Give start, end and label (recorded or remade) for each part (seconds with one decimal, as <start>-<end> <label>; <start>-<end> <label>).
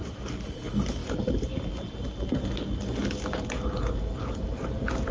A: 0.0-5.1 recorded